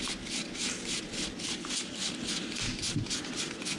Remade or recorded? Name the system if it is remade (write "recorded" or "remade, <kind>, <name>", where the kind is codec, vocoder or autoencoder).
recorded